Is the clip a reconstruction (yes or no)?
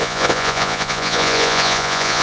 yes